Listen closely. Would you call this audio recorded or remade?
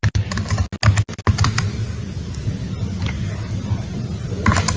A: recorded